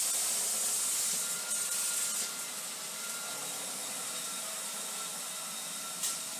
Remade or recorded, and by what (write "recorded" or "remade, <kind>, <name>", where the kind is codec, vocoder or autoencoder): recorded